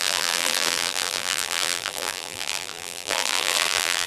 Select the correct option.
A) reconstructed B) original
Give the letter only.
A